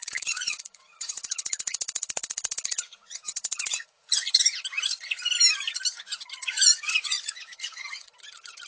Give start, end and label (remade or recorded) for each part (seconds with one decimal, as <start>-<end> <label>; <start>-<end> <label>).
0.0-4.3 remade; 4.3-6.4 recorded; 6.4-8.1 remade; 8.1-8.7 recorded